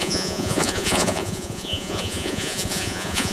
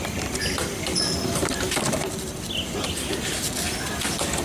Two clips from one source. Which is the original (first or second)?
second